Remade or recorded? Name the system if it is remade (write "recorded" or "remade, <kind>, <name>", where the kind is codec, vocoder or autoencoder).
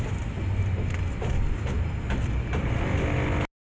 recorded